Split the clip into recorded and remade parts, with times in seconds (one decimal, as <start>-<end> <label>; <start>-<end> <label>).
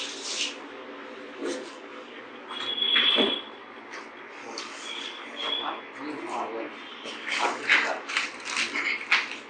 0.0-1.4 recorded; 1.4-2.2 remade; 2.2-4.4 recorded; 4.4-5.8 remade; 5.8-6.9 recorded; 6.9-8.3 remade; 8.3-9.5 recorded